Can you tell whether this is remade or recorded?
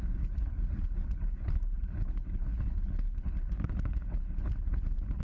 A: remade